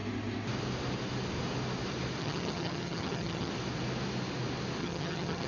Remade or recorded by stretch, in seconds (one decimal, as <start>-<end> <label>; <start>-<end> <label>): 0.0-2.2 recorded; 2.2-3.5 remade; 3.5-4.8 recorded; 4.8-5.5 remade